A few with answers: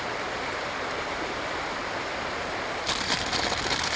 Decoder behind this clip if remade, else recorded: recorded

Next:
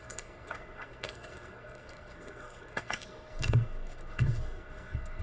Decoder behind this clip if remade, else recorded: remade, codec, SNAC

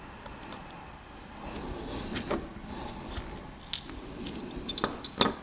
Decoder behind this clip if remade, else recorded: recorded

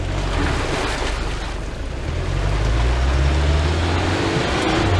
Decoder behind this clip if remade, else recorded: recorded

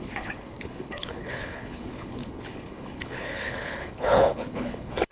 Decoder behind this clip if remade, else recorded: remade, codec, HILCodec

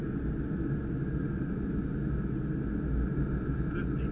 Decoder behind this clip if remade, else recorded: recorded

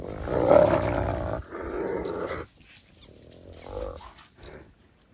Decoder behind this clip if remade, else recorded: recorded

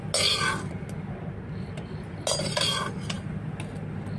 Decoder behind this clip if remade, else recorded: recorded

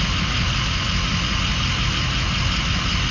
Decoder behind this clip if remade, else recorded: recorded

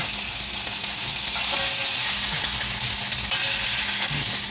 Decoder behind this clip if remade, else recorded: recorded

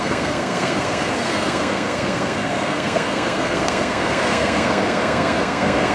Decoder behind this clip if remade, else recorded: remade, codec, SNAC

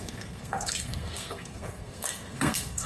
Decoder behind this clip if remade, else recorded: remade, codec, SNAC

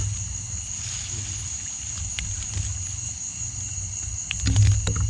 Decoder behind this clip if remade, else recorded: recorded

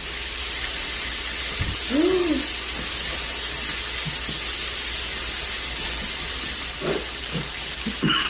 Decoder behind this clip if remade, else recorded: recorded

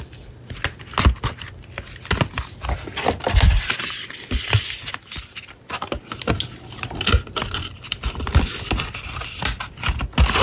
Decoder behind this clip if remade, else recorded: recorded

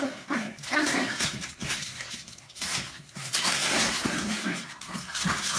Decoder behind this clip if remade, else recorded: remade, codec, SNAC